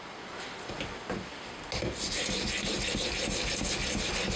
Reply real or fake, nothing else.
real